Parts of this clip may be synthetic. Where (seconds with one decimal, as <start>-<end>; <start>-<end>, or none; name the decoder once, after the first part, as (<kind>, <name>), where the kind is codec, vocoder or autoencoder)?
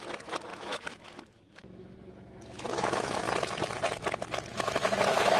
0.0-3.2 (autoencoder, DAC-VAE); 4.5-5.4